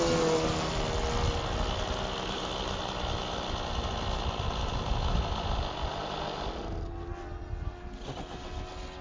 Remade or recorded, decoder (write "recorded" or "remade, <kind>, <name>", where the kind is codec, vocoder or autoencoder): recorded